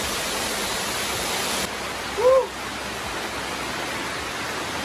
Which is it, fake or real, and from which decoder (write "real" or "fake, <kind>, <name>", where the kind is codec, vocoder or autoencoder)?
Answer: real